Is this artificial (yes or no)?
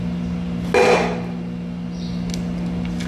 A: no